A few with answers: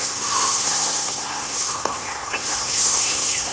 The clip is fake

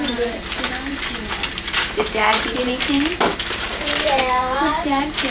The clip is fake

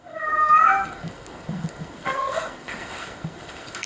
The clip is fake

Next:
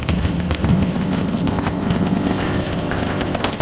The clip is fake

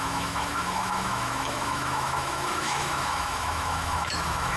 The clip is fake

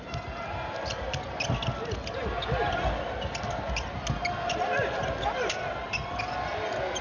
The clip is real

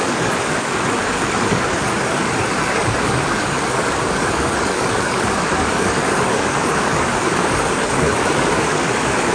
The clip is fake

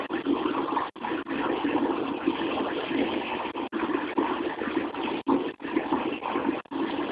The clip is real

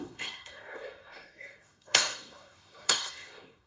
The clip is fake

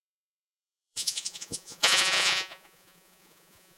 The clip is fake